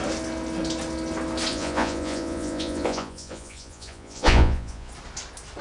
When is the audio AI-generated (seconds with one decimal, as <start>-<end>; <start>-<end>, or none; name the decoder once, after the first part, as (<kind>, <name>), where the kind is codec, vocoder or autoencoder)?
1.5-4.9 (vocoder, Vocos)